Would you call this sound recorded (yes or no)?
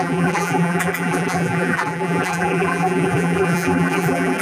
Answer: no